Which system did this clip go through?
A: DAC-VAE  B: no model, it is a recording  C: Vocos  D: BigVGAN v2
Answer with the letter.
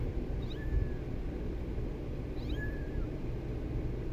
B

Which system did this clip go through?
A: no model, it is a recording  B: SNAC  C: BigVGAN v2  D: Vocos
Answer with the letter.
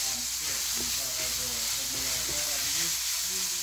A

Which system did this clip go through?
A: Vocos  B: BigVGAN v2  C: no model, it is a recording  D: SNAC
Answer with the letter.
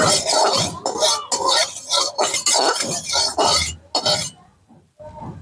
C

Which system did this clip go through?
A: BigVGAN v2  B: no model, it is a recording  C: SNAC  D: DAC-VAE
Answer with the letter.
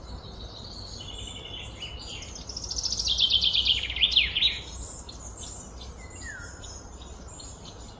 B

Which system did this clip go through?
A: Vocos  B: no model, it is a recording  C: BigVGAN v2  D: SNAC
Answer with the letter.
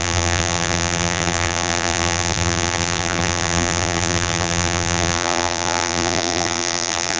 C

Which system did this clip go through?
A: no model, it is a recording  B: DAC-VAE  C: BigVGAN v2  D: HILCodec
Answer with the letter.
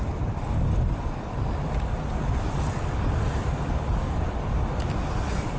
A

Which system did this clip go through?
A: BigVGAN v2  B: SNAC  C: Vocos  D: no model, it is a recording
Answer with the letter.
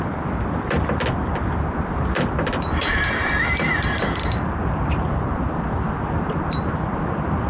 D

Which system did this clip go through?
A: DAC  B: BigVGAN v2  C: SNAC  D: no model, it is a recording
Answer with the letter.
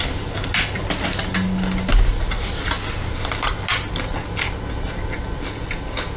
D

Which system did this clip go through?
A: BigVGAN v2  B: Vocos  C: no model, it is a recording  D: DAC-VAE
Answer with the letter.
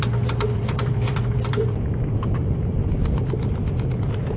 A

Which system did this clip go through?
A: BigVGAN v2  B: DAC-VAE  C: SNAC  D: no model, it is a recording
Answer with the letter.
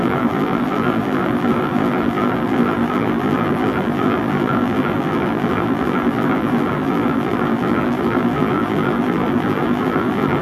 A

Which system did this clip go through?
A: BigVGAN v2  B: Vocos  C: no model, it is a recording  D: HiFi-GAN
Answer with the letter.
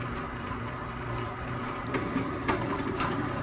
A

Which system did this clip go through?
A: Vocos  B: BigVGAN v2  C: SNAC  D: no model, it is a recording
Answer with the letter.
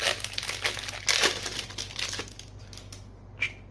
D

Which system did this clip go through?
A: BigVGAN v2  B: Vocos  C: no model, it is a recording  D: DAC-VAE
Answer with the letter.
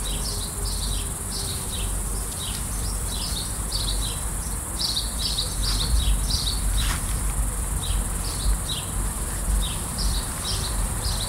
A